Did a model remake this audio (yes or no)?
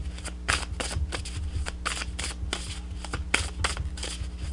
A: no